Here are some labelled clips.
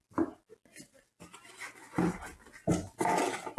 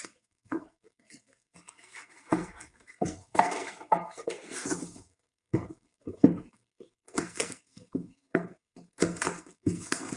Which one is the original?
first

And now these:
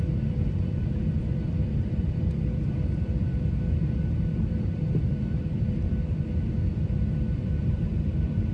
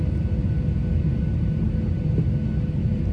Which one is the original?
second